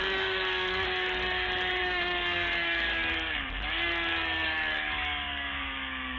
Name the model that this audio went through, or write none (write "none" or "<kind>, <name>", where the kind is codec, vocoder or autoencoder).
codec, DAC